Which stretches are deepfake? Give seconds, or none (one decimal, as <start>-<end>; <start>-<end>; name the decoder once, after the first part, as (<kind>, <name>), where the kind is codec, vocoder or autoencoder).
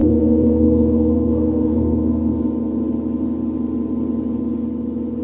0.0-2.3 (codec, SNAC)